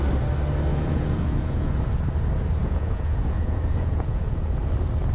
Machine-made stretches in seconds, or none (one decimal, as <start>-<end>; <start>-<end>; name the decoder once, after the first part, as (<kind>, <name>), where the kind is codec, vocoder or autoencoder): 0.7-1.9 (vocoder, Vocos); 2.6-4.6